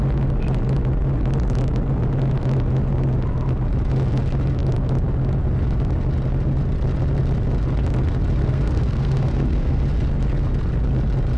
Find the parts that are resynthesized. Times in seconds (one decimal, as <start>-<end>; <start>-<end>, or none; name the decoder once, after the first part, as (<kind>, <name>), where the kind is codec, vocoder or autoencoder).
8.4-9.8 (codec, SNAC)